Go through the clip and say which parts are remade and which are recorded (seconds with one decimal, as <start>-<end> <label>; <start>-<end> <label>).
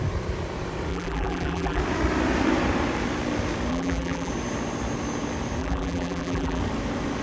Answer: 0.0-0.9 recorded; 0.9-1.8 remade; 1.8-3.7 recorded; 3.7-4.3 remade; 4.3-5.6 recorded; 5.6-6.6 remade; 6.6-7.2 recorded